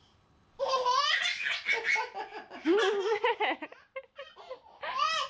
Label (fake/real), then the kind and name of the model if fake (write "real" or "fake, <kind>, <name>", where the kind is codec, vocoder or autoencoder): real